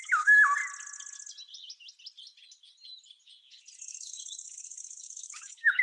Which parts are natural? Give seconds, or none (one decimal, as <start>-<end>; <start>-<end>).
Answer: 0.6-3.8